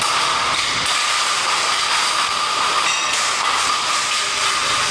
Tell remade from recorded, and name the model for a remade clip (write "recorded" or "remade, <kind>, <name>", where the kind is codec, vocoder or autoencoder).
remade, vocoder, BigVGAN v2